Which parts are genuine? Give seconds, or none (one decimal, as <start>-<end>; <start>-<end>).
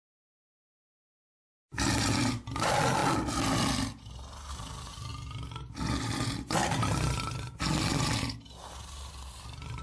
0.0-9.8